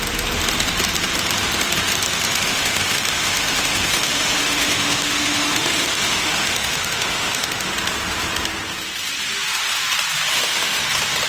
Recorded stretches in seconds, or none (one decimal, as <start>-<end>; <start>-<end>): 0.0-2.5; 7.7-10.3; 10.8-11.3

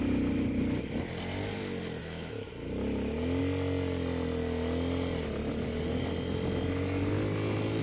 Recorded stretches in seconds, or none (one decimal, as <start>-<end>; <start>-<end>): 0.0-2.0; 2.5-7.8